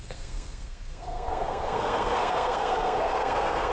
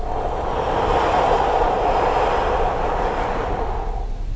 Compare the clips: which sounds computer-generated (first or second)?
first